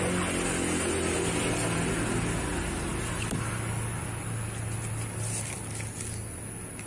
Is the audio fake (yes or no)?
no